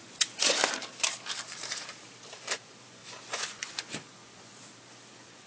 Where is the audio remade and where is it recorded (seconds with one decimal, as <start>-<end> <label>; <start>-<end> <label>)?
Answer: 0.0-0.6 remade; 0.6-2.6 recorded; 2.6-4.5 remade; 4.5-5.1 recorded; 5.1-5.5 remade